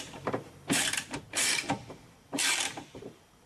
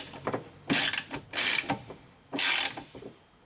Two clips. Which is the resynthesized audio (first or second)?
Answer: first